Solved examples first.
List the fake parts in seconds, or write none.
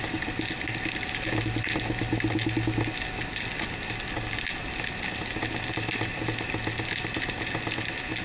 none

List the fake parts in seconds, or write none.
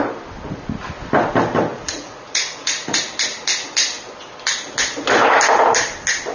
1.7-3.0 (vocoder, Vocos)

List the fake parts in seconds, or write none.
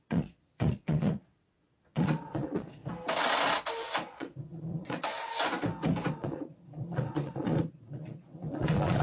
0.0-2.8 (vocoder, Vocos); 4.1-5.1; 6.1-9.0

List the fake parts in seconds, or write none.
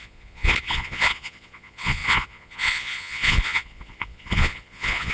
0.0-5.1 (vocoder, Vocos)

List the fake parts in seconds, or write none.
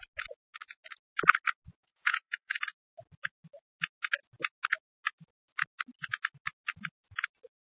1.8-2.6 (vocoder, Vocos)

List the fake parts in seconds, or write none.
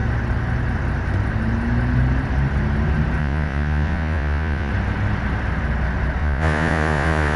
3.2-4.7 (vocoder, Vocos); 6.2-7.4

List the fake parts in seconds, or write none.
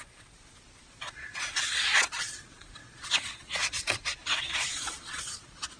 0.0-5.8 (vocoder, Vocos)